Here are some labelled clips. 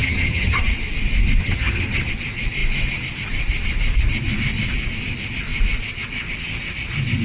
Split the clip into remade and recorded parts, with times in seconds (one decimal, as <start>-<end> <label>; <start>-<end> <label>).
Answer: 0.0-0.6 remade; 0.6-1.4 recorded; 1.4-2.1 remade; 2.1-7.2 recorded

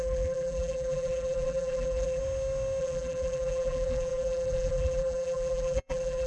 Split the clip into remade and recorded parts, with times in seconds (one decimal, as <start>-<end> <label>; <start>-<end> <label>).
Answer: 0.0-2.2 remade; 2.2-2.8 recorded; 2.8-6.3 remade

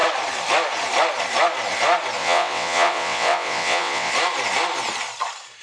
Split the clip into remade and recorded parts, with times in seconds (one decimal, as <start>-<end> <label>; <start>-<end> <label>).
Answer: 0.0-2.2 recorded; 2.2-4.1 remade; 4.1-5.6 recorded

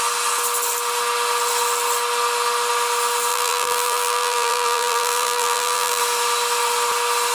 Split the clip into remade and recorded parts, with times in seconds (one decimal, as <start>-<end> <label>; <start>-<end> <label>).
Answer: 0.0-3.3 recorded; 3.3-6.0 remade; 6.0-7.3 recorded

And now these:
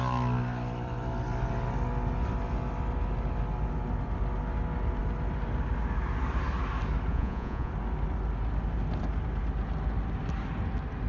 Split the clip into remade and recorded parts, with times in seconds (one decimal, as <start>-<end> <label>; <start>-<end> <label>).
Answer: 0.0-7.1 recorded; 7.1-7.7 remade; 7.7-11.1 recorded

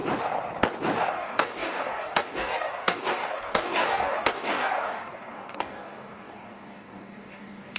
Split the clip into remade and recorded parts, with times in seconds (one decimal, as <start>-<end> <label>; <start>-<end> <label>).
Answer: 0.0-1.1 recorded; 1.1-7.8 remade